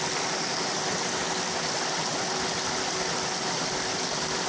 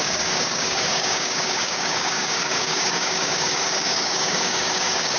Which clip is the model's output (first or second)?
second